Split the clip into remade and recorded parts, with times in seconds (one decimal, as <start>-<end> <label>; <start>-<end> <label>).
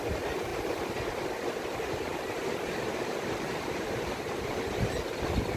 0.0-2.1 recorded; 2.1-4.5 remade; 4.5-5.6 recorded